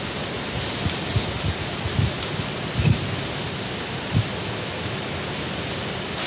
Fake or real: real